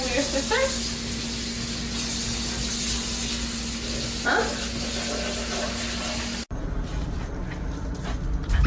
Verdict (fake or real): real